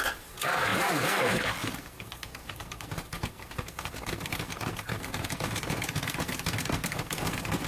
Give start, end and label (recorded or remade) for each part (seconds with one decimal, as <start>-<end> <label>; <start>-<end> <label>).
0.0-7.7 remade